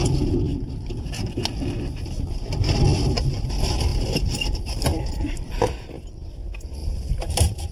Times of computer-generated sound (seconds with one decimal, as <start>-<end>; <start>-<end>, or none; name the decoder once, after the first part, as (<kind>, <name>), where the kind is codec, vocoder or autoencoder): 0.5-1.4 (vocoder, BigVGAN v2); 3.9-5.5; 6.8-7.7